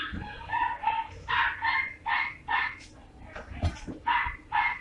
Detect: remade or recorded recorded